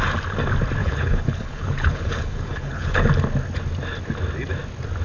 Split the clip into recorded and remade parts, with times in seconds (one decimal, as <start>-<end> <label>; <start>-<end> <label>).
0.0-0.8 recorded; 0.8-3.1 remade; 3.1-5.0 recorded